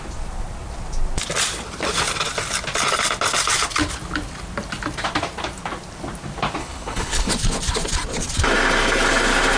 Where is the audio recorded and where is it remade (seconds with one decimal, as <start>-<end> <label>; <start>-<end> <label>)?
0.0-6.6 recorded; 6.6-7.3 remade; 7.3-9.6 recorded